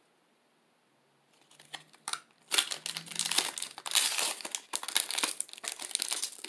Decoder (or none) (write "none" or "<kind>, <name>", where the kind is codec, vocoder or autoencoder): none